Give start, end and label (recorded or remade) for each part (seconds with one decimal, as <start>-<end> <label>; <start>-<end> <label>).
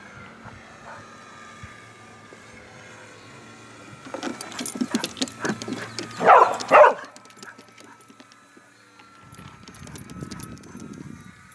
0.0-11.5 recorded